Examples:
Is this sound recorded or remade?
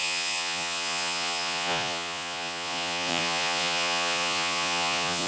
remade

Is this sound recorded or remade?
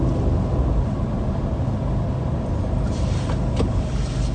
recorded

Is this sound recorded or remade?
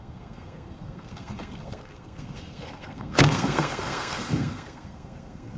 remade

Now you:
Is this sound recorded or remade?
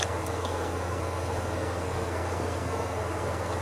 remade